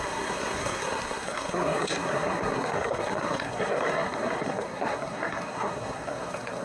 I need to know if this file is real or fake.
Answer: fake